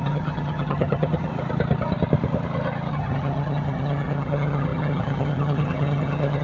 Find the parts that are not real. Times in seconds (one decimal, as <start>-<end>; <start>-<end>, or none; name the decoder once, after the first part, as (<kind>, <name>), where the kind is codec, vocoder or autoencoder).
0.0-1.3 (vocoder, HiFi-GAN); 2.9-6.4